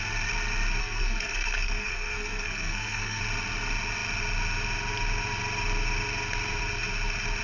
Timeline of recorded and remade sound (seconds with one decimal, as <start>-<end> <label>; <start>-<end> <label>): 0.0-0.8 recorded; 0.8-3.2 remade; 3.2-7.4 recorded